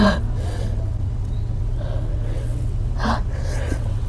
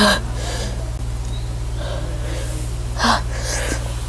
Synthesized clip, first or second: first